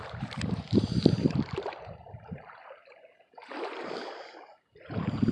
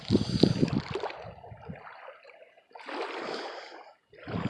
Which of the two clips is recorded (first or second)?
second